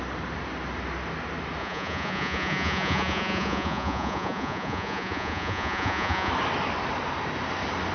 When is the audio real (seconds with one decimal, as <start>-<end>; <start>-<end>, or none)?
0.0-1.6; 6.3-7.9